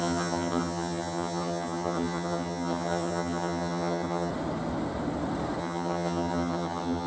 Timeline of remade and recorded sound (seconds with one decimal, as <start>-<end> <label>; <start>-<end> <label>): 0.0-4.3 remade; 4.3-5.6 recorded; 5.6-7.1 remade